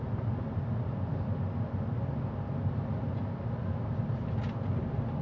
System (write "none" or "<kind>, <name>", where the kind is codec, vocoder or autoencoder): none